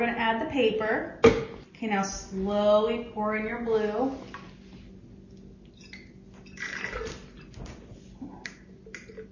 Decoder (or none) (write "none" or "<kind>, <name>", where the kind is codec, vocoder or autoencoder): none